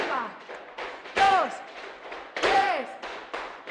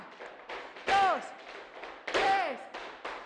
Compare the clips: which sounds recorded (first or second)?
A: second